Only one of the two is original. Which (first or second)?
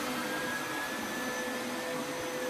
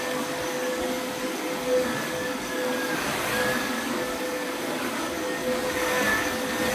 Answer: first